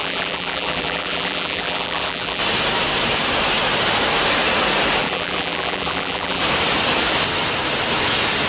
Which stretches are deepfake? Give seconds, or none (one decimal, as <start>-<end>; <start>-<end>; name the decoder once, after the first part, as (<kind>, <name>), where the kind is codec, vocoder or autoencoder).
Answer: 0.0-2.4 (vocoder, BigVGAN v2); 5.0-6.4